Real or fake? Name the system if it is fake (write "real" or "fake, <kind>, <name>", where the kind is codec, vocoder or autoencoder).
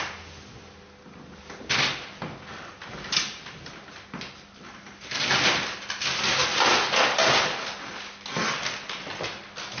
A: real